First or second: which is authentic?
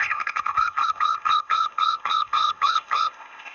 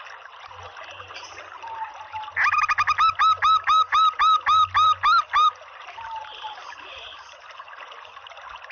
second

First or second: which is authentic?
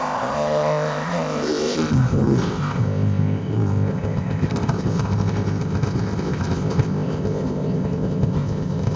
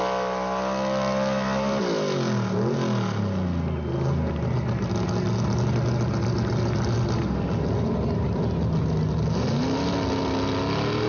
second